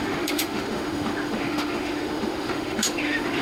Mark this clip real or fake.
fake